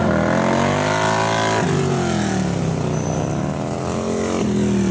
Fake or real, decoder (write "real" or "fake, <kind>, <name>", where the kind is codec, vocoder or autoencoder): real